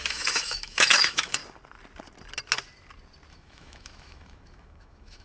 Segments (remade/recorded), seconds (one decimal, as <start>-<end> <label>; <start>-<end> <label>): 0.0-1.4 remade; 1.4-3.3 recorded; 3.3-5.2 remade